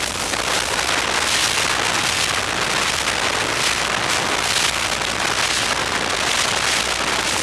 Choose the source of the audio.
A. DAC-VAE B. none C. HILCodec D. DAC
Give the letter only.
B